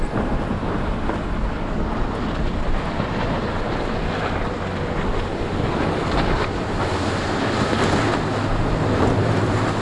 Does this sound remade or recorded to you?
recorded